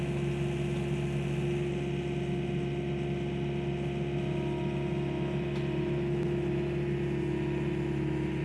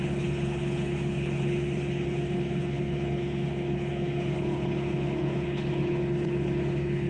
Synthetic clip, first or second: second